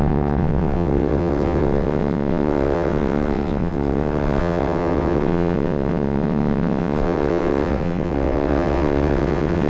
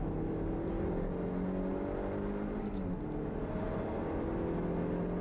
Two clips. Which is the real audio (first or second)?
second